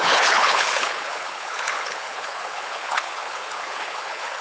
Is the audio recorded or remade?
remade